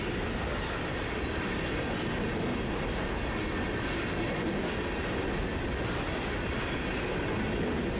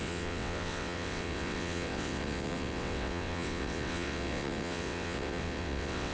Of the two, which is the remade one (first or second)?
second